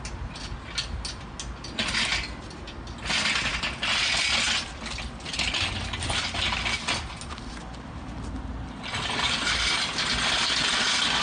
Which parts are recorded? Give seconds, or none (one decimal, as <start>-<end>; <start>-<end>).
0.0-11.2